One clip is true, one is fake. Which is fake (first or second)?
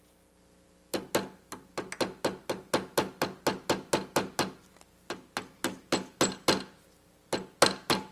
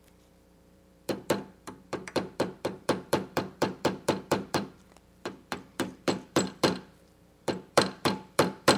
second